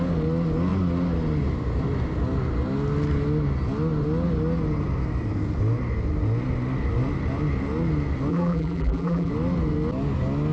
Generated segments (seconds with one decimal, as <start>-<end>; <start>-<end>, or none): 8.3-9.3